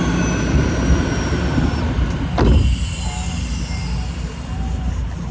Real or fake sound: real